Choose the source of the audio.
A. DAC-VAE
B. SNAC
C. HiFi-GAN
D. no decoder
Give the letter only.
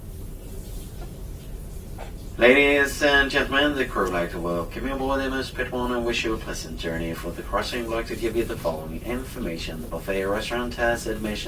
D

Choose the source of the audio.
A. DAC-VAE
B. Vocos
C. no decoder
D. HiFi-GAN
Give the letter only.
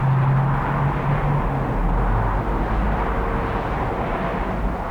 C